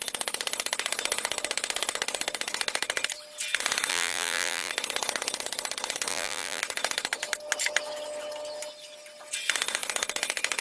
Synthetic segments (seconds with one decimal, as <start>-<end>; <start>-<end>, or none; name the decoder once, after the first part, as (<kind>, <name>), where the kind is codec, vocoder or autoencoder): 3.9-4.7 (vocoder, BigVGAN v2); 6.1-6.6